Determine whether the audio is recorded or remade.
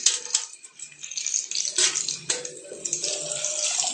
recorded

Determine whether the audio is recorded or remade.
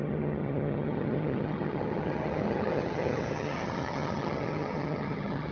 remade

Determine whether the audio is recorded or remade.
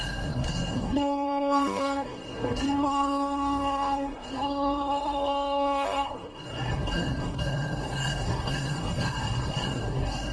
remade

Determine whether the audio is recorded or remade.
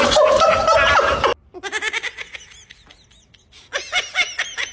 recorded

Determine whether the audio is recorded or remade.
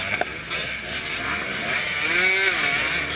recorded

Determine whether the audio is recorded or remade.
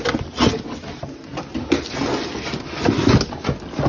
recorded